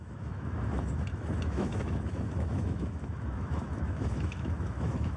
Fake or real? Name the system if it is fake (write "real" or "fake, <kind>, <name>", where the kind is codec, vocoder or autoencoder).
fake, autoencoder, DAC-VAE